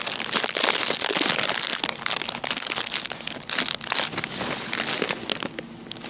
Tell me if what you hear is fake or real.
real